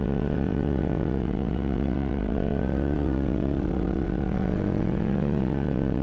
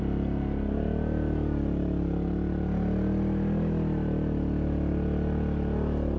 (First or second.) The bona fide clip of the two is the second